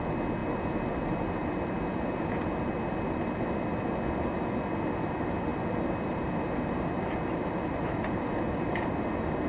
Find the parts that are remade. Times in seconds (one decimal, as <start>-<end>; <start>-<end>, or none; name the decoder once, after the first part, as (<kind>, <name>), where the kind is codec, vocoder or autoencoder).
none

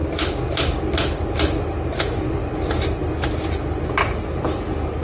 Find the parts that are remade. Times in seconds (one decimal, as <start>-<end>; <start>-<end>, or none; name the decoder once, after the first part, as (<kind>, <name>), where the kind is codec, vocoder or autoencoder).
none